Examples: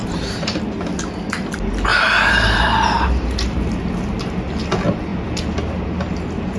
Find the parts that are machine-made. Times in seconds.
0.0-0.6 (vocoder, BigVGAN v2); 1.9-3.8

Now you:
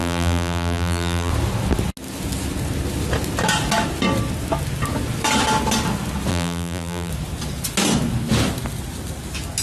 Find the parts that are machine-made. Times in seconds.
0.0-1.3 (vocoder, BigVGAN v2); 6.3-7.1

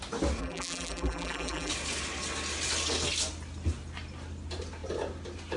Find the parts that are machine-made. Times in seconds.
0.4-1.7 (vocoder, BigVGAN v2)

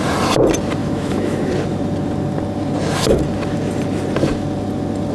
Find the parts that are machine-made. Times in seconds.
0.8-1.5 (autoencoder, DAC-VAE)

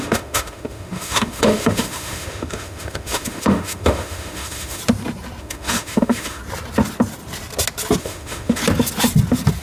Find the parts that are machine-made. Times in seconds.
0.0-4.8 (autoencoder, DAC-VAE); 5.4-6.4; 8.0-8.6

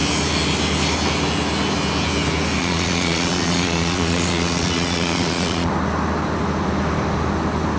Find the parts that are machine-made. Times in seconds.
2.6-5.7 (vocoder, Vocos)

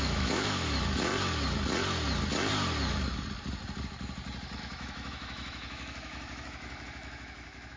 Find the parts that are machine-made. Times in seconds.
0.0-1.1 (autoencoder, DAC-VAE); 4.6-7.8

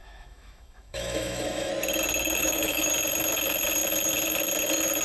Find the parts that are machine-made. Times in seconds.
0.0-1.7 (autoencoder, DAC-VAE); 2.4-2.9